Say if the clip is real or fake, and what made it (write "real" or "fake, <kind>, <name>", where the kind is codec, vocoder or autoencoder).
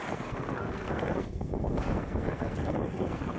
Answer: fake, codec, SNAC